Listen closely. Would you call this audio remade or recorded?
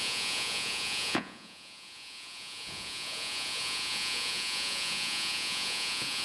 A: remade